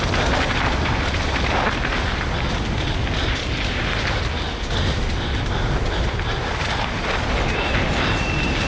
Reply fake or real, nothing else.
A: real